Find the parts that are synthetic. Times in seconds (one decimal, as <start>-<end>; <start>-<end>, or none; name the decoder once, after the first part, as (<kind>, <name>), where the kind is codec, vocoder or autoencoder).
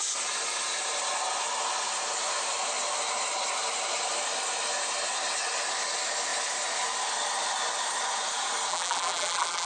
8.7-9.7 (vocoder, BigVGAN v2)